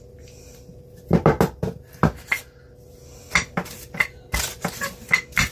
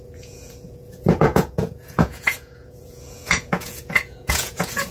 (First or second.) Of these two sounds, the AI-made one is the second